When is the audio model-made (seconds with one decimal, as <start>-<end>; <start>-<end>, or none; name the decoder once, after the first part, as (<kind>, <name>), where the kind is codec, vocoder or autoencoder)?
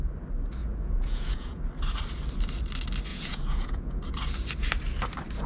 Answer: 0.6-1.6 (vocoder, Vocos); 3.1-4.0